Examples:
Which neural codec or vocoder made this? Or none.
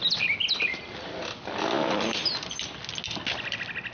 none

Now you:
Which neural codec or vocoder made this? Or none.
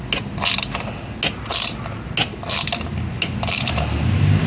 none